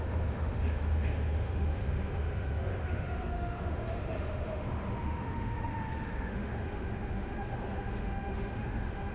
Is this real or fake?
fake